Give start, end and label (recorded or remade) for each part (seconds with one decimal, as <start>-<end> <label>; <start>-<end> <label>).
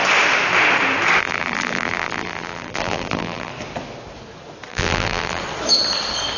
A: 0.0-1.2 recorded; 1.2-3.5 remade; 3.5-4.7 recorded; 4.7-5.4 remade; 5.4-6.4 recorded